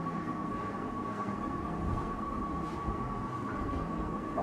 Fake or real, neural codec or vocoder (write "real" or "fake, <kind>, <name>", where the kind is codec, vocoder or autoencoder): fake, codec, SNAC